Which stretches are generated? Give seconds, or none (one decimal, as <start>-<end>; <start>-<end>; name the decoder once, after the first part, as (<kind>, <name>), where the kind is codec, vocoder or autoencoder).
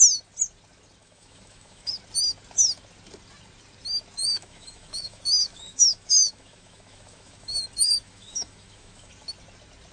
1.0-1.9 (autoencoder, DAC-VAE); 4.2-9.1